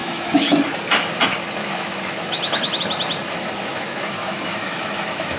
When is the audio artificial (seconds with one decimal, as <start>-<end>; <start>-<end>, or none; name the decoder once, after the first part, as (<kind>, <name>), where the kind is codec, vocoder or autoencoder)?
0.0-0.5 (autoencoder, DAC-VAE); 1.6-2.8; 3.7-5.4